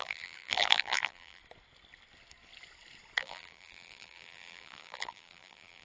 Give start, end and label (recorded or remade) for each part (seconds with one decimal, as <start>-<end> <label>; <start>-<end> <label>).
0.0-1.4 remade; 1.4-3.2 recorded; 3.2-5.8 remade